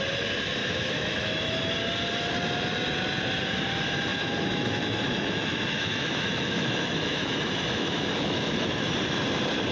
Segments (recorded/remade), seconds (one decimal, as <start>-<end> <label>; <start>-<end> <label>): 0.0-0.6 recorded; 0.6-1.7 remade; 1.7-4.1 recorded; 4.1-8.9 remade; 8.9-9.7 recorded